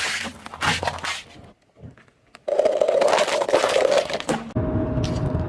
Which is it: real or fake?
real